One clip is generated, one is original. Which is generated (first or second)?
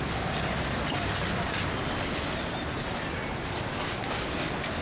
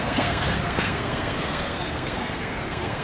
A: second